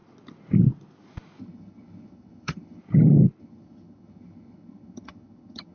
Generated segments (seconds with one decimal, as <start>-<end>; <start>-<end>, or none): 1.4-2.8; 3.4-5.7